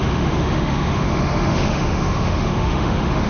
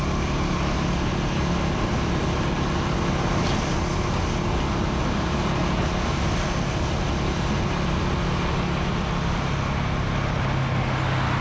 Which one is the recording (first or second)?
second